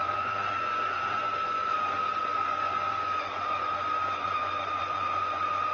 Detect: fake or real fake